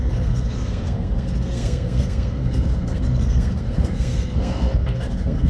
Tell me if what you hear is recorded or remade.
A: remade